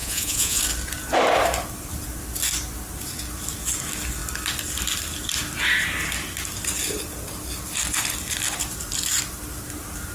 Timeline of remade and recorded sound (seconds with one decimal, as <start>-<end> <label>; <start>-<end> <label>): 0.0-0.6 remade; 0.6-10.1 recorded